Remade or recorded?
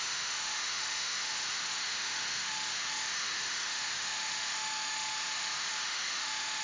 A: remade